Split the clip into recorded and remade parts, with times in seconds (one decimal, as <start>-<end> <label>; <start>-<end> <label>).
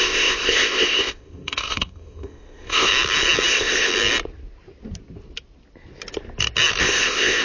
0.0-2.9 remade; 2.9-3.5 recorded; 3.5-3.9 remade; 3.9-6.8 recorded; 6.8-7.4 remade